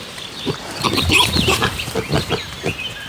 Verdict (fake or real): real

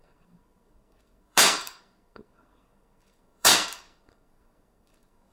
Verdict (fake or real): fake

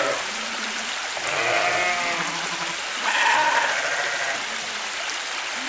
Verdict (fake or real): real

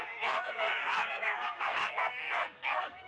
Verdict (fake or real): fake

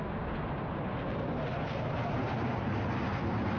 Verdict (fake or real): real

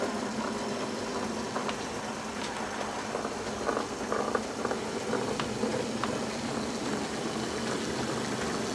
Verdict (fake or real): real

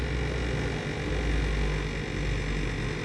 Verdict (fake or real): real